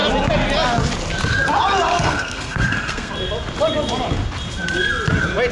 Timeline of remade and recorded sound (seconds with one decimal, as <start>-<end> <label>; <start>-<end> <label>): 0.0-1.9 recorded; 1.9-3.1 remade; 3.1-5.5 recorded